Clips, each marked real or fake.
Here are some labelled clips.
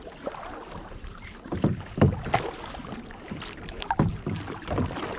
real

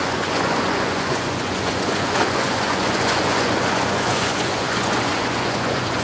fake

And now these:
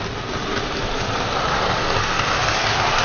real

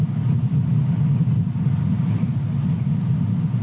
real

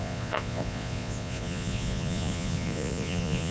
fake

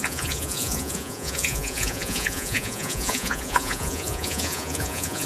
fake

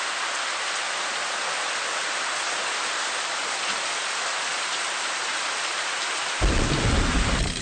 real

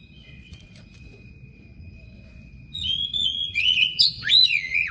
fake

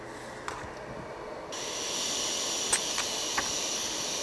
real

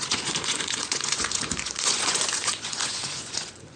fake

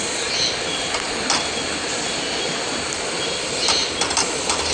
real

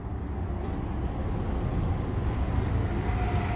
real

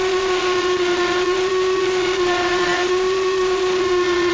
fake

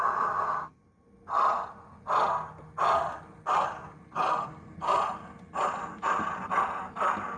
real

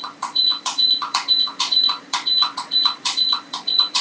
fake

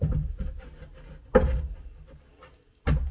real